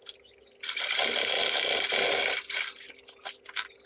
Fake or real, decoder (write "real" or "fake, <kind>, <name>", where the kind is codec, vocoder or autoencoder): real